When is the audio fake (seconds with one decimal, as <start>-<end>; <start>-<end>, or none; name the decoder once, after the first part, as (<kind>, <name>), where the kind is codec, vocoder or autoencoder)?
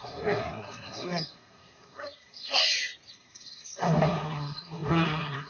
0.0-2.6 (codec, SNAC); 3.1-5.5